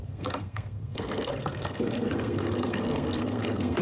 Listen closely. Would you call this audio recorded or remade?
remade